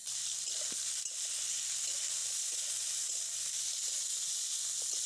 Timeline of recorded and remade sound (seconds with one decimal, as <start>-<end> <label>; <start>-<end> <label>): 0.0-5.1 recorded